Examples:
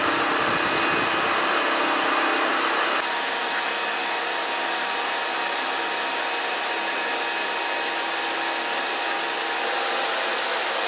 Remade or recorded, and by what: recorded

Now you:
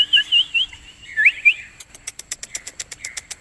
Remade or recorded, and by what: remade, vocoder, BigVGAN v2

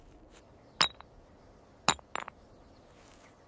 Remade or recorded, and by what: recorded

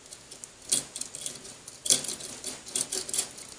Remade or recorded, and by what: recorded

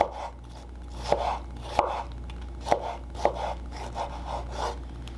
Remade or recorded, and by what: recorded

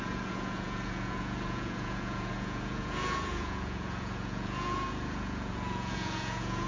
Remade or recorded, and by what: remade, vocoder, Vocos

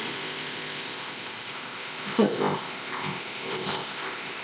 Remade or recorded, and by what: remade, codec, ZipCodec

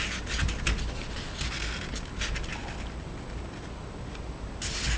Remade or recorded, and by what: recorded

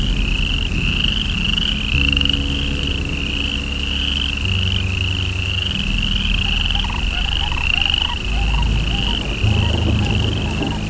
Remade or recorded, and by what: recorded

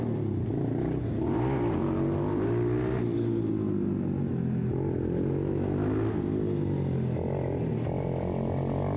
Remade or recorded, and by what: recorded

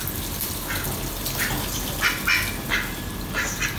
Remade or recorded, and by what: recorded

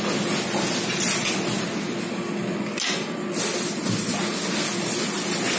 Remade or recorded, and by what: recorded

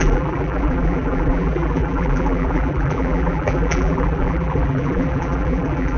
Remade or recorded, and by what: remade, vocoder, BigVGAN v2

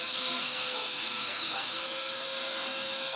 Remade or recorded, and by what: remade, codec, SNAC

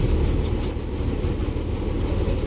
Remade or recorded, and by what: recorded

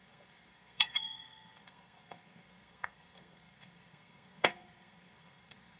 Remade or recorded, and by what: remade, codec, SNAC